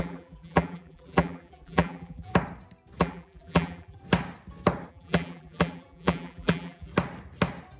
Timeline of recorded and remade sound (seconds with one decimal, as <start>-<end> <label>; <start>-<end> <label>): 0.0-2.3 remade; 2.3-3.0 recorded; 3.0-4.0 remade; 4.0-4.9 recorded; 4.9-6.9 remade; 6.9-7.8 recorded